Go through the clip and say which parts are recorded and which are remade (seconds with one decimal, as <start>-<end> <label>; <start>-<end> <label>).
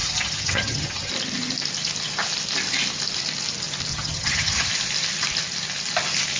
0.0-1.1 remade; 1.1-3.9 recorded; 3.9-4.7 remade; 4.7-6.4 recorded